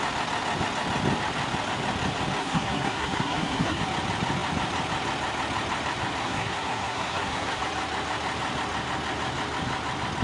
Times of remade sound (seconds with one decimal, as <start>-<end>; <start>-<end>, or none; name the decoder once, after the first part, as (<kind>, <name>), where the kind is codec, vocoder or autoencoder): 2.4-3.8 (codec, SNAC); 6.2-7.6